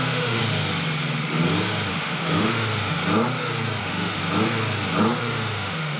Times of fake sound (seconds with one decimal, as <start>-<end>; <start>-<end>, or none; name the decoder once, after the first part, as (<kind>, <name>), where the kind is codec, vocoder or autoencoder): 0.0-0.4 (autoencoder, DAC-VAE); 1.9-3.0; 3.8-4.2; 5.2-6.0